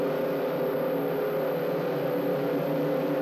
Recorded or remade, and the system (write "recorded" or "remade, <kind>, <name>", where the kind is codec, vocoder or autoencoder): recorded